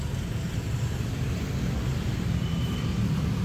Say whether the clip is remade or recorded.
recorded